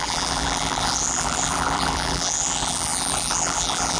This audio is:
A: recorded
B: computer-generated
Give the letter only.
B